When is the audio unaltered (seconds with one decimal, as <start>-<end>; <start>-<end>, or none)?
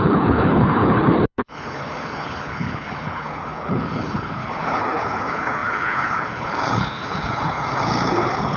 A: none